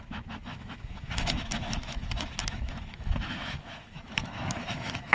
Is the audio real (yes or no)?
no